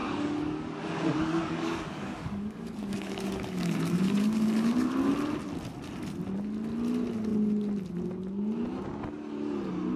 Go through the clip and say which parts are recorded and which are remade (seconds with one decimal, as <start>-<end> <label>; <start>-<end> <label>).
0.0-4.9 remade; 4.9-10.0 recorded